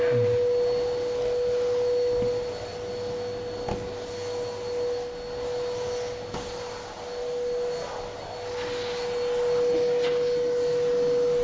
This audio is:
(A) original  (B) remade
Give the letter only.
A